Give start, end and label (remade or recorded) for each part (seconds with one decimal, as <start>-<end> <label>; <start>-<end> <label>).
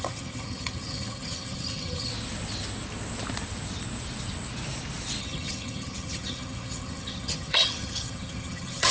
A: 0.0-2.1 remade; 2.1-5.2 recorded; 5.2-8.9 remade